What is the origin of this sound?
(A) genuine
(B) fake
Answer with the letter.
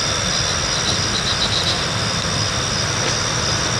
A